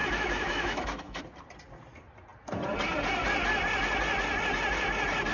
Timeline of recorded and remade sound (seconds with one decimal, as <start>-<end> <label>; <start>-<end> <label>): 0.0-1.2 remade; 1.2-5.3 recorded